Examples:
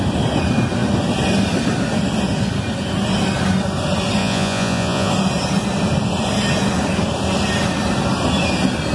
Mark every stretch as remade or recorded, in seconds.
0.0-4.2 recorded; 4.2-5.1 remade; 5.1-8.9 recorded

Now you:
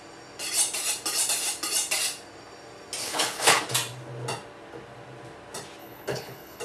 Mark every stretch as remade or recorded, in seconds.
0.0-3.0 recorded; 3.0-3.6 remade; 3.6-5.8 recorded; 5.8-6.6 remade

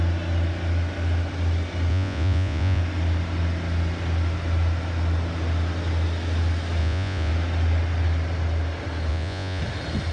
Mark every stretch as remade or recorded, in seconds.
0.0-1.9 recorded; 1.9-2.8 remade; 2.8-6.8 recorded; 6.8-7.3 remade; 7.3-9.1 recorded; 9.1-9.6 remade; 9.6-10.1 recorded

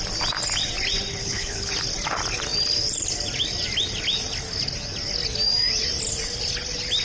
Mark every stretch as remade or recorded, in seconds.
0.0-1.2 recorded; 1.2-1.7 remade; 1.7-7.0 recorded

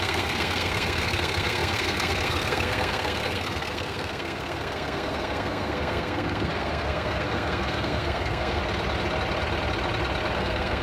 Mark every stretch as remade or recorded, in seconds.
0.0-8.6 remade; 8.6-10.3 recorded; 10.3-10.8 remade

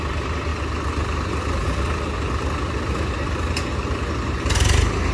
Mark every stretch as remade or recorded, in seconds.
0.0-5.1 recorded